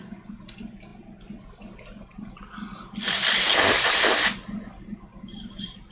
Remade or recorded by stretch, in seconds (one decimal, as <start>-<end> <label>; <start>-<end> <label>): 0.0-5.9 recorded